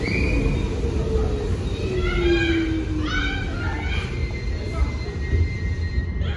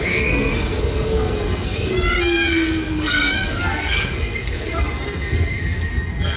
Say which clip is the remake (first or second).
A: second